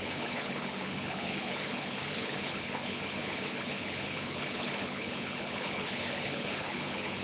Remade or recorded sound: remade